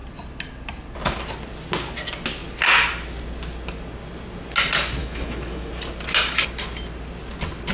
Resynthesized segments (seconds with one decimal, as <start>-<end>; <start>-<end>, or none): 5.0-5.7